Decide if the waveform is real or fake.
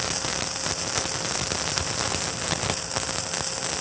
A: real